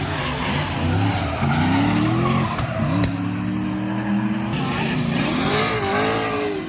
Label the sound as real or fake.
real